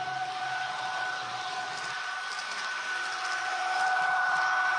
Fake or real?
fake